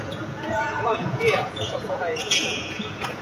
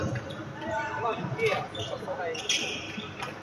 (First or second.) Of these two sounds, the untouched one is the second